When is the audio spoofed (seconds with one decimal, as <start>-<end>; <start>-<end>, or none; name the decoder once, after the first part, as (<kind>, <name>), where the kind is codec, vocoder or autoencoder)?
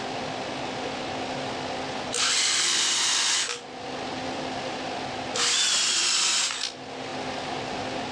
none